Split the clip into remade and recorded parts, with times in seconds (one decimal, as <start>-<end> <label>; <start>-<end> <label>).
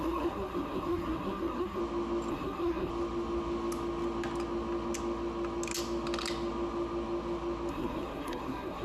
0.0-1.8 remade; 1.8-2.3 recorded; 2.3-2.9 remade; 2.9-7.7 recorded; 7.7-8.8 remade